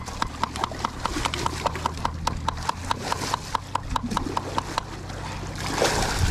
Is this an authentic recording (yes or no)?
yes